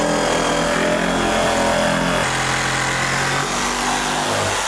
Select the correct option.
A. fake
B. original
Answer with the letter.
B